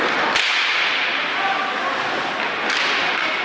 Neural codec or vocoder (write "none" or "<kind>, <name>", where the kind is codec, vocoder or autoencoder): none